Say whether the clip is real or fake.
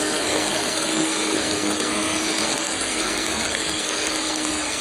fake